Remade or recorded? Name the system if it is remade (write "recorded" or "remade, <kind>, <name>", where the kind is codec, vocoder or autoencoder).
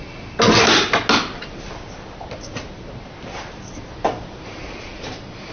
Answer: recorded